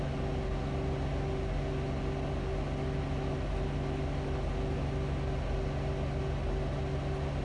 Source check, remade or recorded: recorded